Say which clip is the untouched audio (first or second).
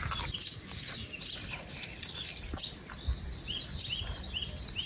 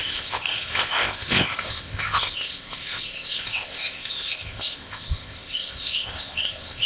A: first